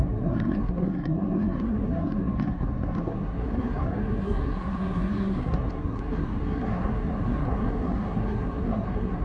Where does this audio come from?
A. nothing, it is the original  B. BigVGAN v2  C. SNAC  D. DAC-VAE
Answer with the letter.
C